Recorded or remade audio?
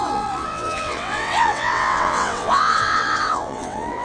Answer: remade